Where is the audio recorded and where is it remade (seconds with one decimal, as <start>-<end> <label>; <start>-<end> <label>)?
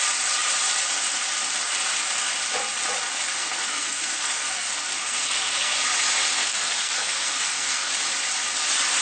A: 0.0-3.4 recorded; 3.4-5.7 remade; 5.7-6.4 recorded; 6.4-7.9 remade; 7.9-9.0 recorded